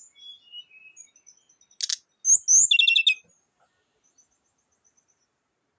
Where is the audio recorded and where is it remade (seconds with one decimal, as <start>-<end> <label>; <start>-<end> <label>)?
0.0-5.8 recorded